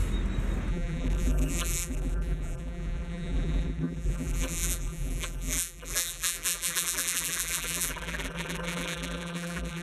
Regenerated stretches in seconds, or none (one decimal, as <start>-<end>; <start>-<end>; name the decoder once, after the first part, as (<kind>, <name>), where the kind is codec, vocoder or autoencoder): 0.7-9.8 (vocoder, BigVGAN v2)